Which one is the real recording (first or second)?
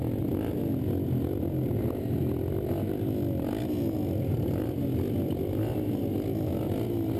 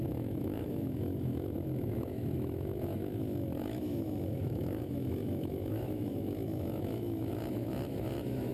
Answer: first